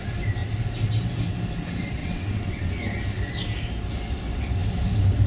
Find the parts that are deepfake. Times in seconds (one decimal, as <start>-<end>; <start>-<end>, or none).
2.0-2.7